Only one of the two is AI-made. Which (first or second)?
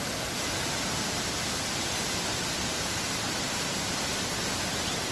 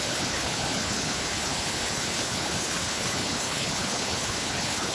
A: second